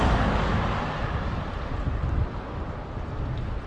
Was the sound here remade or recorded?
recorded